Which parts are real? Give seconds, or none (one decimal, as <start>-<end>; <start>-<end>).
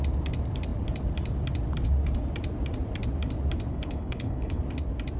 0.0-3.7; 4.6-5.2